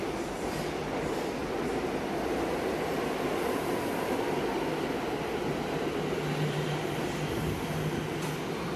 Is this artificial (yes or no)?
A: no